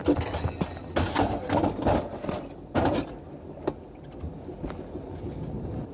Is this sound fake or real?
real